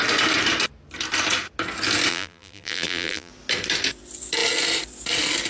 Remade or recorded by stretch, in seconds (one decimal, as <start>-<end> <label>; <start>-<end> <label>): 0.0-2.1 recorded; 2.1-3.3 remade; 3.3-5.5 recorded